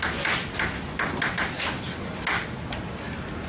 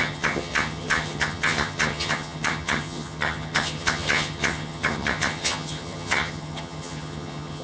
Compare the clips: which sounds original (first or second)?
first